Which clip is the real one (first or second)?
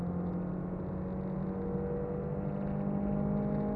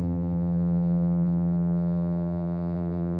first